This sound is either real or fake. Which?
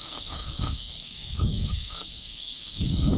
fake